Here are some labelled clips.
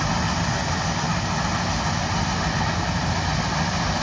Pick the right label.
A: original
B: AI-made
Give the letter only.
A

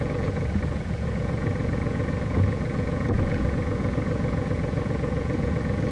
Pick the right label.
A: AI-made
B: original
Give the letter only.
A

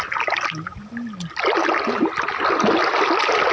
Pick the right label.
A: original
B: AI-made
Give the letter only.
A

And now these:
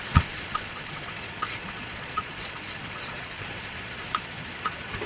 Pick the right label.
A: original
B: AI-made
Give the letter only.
B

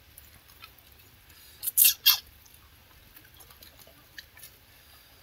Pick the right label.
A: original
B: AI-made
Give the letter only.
A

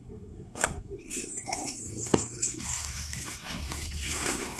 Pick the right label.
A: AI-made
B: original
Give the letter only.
A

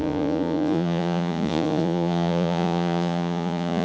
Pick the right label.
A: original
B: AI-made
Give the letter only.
B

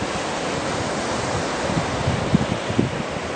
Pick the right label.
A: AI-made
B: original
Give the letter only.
B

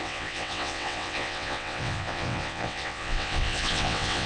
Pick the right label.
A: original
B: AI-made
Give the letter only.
B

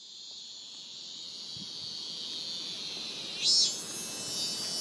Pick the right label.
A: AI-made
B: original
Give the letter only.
B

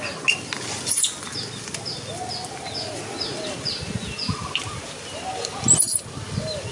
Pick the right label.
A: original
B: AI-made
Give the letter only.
A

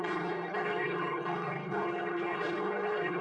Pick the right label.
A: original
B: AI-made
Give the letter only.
B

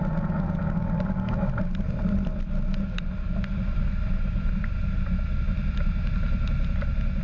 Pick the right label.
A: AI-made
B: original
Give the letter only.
B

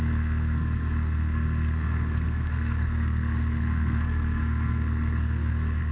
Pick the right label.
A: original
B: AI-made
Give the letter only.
B